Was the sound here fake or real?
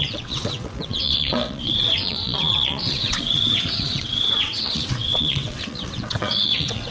fake